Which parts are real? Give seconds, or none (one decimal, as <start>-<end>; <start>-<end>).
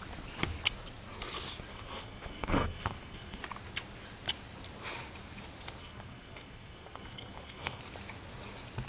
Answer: 0.0-1.7; 3.4-5.8; 7.8-8.9